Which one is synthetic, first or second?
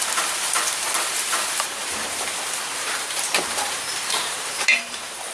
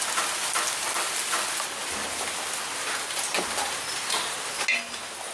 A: first